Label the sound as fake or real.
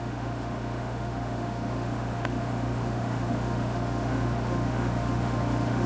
fake